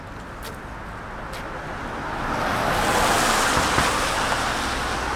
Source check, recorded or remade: recorded